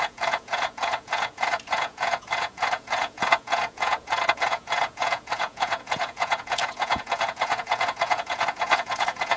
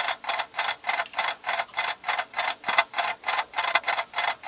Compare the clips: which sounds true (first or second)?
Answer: second